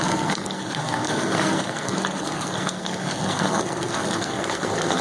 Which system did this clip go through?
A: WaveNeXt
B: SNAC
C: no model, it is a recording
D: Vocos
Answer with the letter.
B